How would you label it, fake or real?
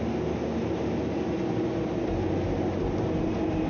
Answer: real